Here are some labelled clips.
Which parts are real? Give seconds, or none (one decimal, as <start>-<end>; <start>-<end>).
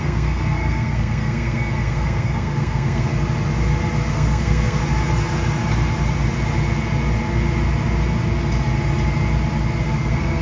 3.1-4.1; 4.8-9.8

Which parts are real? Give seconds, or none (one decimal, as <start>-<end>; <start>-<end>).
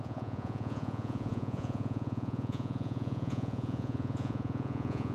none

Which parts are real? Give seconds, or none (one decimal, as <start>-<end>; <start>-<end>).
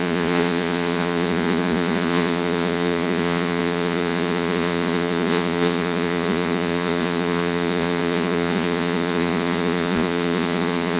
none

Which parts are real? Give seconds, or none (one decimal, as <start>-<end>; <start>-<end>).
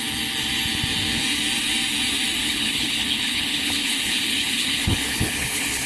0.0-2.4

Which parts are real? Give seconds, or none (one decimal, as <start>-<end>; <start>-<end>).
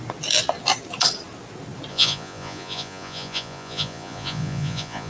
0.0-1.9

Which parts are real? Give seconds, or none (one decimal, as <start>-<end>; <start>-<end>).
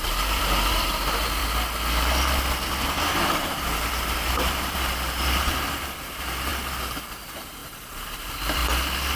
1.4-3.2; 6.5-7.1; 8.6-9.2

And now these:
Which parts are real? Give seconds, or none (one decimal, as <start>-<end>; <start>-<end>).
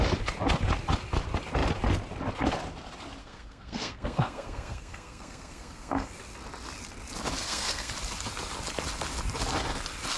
0.0-3.2; 6.1-7.4; 7.9-10.2